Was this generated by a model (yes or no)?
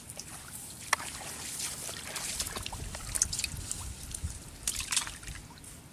no